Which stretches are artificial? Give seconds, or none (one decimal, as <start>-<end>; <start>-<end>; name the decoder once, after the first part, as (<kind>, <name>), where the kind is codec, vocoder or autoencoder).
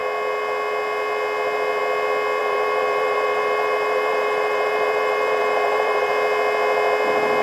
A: 2.4-6.1 (vocoder, BigVGAN v2)